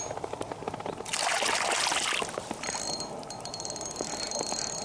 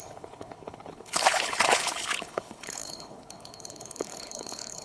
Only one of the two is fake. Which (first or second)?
second